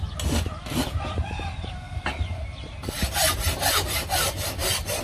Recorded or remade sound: recorded